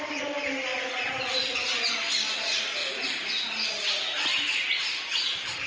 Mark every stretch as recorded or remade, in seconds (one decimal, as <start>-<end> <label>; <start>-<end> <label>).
0.0-5.7 recorded